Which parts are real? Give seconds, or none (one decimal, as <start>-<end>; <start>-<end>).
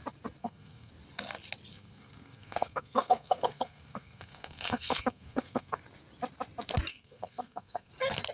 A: 0.0-0.4; 0.9-1.7; 5.8-6.9; 7.9-8.3